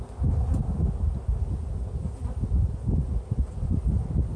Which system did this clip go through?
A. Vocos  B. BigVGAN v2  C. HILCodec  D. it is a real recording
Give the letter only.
D